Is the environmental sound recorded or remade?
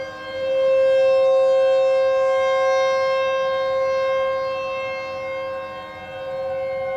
recorded